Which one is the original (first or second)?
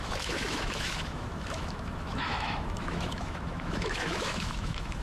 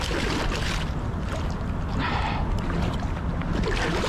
second